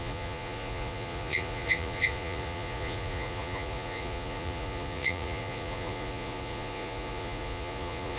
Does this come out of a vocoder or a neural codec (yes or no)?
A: yes